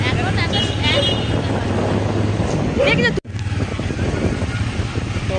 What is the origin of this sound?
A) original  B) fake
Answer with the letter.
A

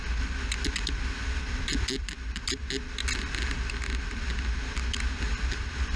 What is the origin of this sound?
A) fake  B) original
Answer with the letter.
B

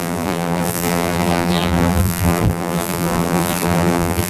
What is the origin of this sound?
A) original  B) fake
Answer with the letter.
B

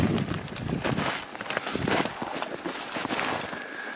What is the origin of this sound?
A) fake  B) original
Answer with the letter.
B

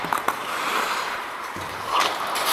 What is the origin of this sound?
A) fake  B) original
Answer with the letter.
A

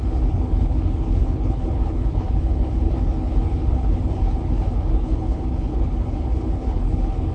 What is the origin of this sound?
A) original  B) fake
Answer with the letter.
B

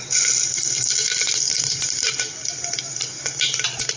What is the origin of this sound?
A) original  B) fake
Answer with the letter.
A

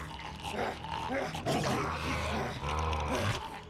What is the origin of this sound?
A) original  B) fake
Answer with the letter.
A